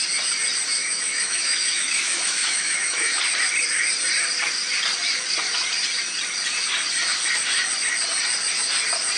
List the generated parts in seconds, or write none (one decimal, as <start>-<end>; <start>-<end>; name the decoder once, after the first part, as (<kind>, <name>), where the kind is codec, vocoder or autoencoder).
0.8-3.2 (autoencoder, DAC-VAE)

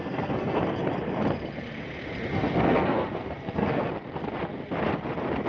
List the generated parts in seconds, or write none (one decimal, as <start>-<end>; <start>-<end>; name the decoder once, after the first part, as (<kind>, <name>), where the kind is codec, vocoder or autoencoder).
0.0-0.6 (codec, SNAC); 2.3-3.9